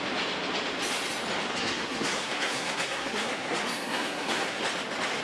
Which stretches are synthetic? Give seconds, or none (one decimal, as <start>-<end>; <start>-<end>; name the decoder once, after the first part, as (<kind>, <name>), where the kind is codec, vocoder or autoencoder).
1.5-4.6 (codec, SNAC)